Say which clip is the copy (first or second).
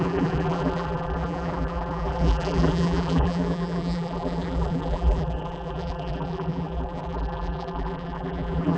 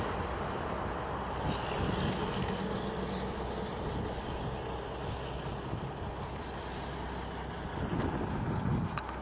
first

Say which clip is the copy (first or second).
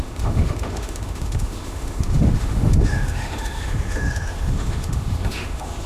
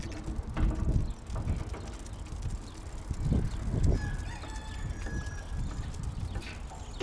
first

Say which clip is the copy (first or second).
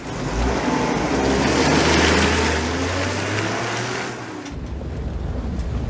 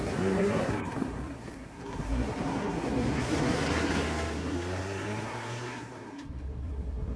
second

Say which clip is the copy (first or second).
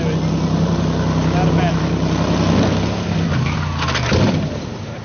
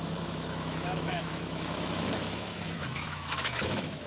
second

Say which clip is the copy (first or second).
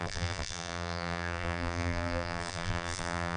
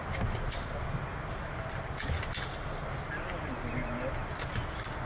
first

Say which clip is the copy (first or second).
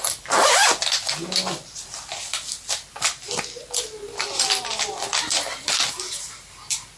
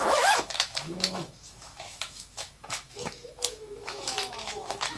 second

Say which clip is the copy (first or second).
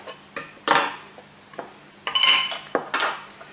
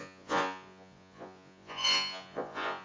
second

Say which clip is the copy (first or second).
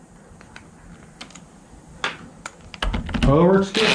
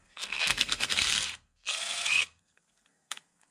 second